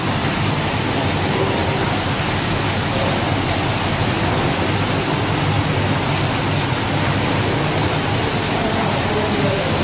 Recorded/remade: recorded